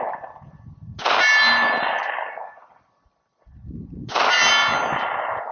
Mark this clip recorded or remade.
recorded